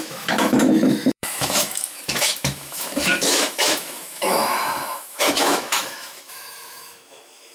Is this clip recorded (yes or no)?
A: no